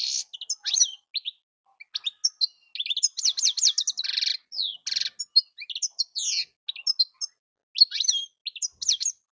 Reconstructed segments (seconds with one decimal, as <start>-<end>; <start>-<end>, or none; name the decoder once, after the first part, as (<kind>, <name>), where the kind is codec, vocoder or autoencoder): none

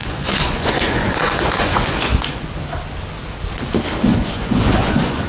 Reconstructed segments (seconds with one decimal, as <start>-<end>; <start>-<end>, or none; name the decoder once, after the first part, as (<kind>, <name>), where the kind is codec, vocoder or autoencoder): 0.0-2.5 (vocoder, Vocos); 4.1-5.3